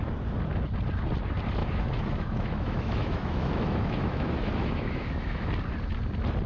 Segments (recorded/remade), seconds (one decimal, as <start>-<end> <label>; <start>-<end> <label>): 0.0-1.6 recorded; 1.6-5.5 remade; 5.5-6.5 recorded